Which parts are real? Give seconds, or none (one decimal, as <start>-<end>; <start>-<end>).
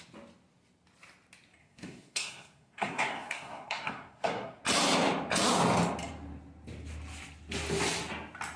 0.0-1.6; 4.6-8.6